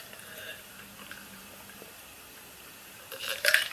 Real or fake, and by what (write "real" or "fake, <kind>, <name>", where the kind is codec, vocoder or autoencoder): fake, vocoder, BigVGAN v2